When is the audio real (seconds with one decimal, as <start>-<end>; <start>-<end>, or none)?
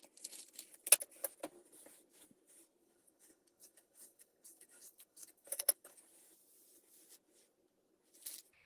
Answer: 0.0-2.8; 6.0-8.7